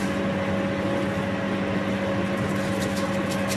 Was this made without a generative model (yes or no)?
yes